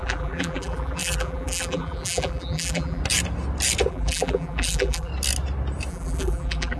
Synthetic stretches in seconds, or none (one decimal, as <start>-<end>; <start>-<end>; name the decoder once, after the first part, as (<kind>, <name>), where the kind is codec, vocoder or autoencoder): 0.0-3.0 (vocoder, BigVGAN v2); 3.9-5.1; 5.9-6.8